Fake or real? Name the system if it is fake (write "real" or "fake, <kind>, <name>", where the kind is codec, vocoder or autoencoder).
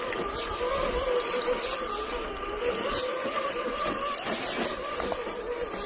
real